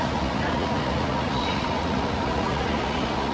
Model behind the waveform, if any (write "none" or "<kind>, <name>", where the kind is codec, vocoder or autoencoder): vocoder, Vocos